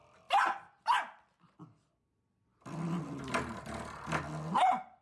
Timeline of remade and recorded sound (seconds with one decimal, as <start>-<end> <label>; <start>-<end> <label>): 0.0-5.0 recorded